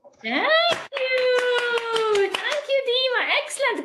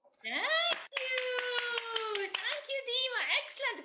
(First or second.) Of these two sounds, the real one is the second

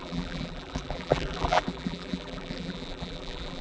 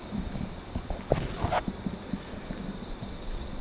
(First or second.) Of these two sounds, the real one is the second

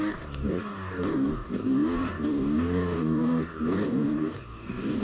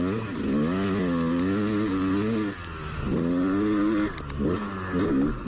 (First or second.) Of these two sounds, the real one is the second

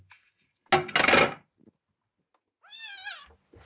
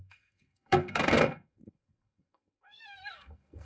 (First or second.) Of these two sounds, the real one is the first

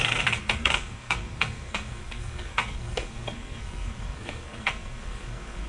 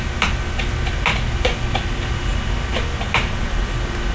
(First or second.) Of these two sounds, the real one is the second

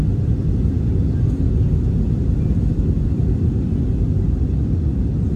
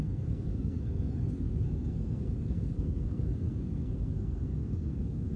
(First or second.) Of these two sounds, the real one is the first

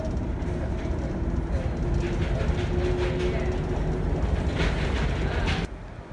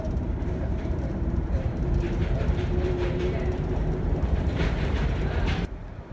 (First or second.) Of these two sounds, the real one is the first